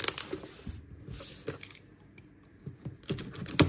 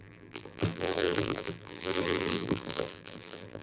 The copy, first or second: second